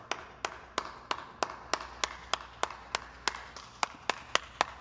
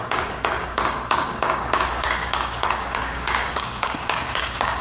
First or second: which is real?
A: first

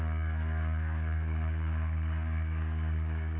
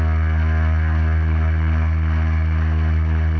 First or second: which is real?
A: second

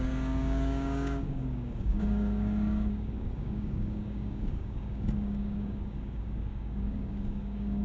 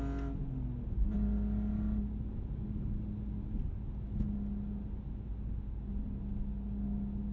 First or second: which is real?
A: second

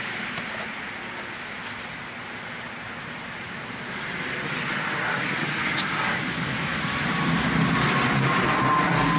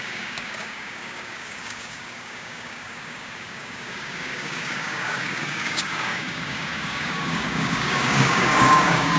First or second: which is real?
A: first